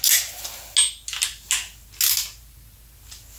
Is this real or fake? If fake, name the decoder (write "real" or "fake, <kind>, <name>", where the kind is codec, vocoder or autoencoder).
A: real